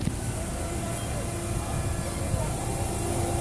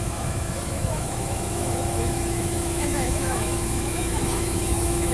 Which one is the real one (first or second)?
first